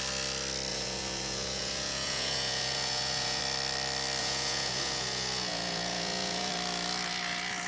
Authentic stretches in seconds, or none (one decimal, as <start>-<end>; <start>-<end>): 0.0-0.7; 3.4-4.2; 6.5-7.7